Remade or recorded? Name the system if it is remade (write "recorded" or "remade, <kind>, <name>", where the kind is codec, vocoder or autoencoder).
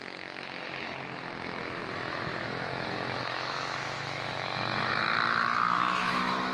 remade, autoencoder, DAC-VAE